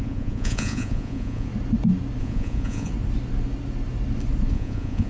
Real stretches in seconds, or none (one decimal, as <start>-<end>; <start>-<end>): 1.5-2.2; 2.9-4.5